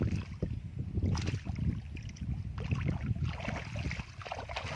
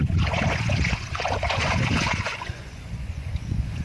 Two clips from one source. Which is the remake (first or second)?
second